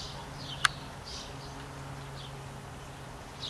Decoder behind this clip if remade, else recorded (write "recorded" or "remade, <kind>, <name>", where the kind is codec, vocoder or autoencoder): recorded